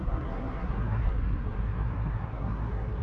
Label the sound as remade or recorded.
remade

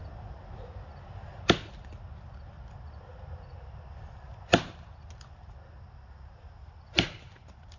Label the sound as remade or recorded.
recorded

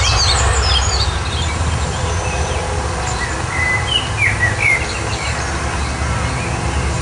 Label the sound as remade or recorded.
recorded